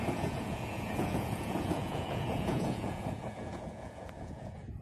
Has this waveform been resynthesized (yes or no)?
yes